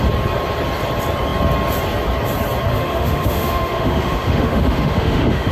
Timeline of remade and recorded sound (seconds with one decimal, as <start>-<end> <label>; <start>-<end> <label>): 0.0-2.7 recorded; 2.7-5.5 remade